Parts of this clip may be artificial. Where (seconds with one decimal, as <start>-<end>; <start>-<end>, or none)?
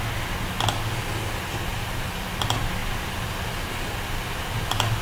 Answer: 1.7-2.3; 2.8-3.6